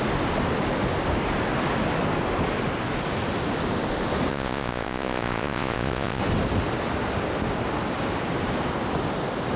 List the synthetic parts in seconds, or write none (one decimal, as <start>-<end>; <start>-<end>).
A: 4.3-6.2